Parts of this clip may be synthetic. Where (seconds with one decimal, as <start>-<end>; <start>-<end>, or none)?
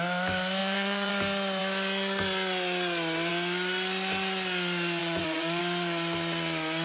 0.6-1.1; 5.0-5.6